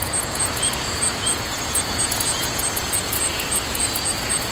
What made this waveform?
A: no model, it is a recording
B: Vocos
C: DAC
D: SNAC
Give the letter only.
B